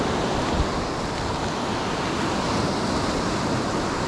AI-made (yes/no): no